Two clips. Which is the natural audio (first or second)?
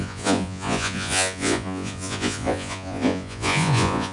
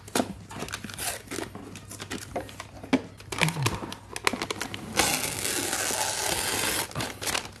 second